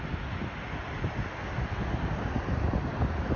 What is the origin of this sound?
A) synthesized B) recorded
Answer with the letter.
B